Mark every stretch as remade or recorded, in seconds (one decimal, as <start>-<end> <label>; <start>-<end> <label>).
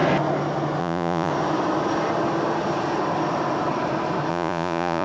0.0-0.8 recorded; 0.8-1.3 remade; 1.3-4.3 recorded; 4.3-5.0 remade